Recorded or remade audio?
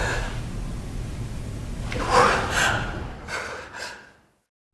recorded